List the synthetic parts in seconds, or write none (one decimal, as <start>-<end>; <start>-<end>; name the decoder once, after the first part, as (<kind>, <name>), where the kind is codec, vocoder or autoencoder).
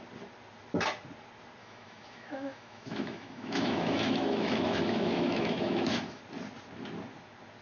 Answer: 1.6-6.2 (autoencoder, DAC-VAE)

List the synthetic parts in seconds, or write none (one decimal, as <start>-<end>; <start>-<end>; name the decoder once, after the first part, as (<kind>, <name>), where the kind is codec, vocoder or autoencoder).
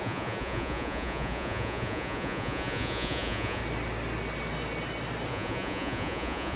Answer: 0.0-3.6 (vocoder, Vocos); 5.3-6.6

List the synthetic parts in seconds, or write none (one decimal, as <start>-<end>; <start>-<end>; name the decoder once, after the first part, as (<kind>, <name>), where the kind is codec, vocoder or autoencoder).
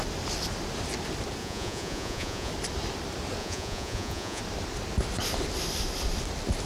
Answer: 1.4-2.5 (vocoder, Vocos); 3.4-4.4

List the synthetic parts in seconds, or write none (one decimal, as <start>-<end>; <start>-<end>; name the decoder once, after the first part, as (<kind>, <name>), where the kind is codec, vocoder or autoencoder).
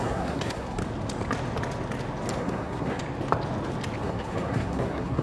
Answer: 0.0-0.8 (codec, SNAC); 2.4-3.0; 4.0-5.2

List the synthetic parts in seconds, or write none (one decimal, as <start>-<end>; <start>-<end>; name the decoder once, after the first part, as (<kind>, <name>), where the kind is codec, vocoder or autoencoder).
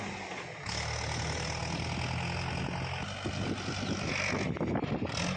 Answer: none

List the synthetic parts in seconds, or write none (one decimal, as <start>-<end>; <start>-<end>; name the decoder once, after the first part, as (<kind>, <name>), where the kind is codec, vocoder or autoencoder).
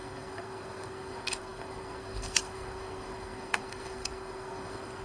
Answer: 0.0-5.0 (codec, SNAC)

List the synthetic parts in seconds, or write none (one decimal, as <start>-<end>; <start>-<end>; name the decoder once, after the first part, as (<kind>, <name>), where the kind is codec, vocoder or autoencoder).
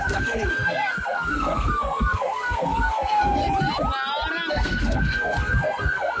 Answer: 0.0-3.4 (codec, SNAC); 4.5-6.2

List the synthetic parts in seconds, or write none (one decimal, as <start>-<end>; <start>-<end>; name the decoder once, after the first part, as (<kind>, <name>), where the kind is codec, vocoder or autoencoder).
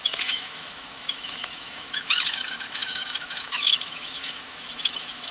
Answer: 0.0-5.3 (autoencoder, DAC-VAE)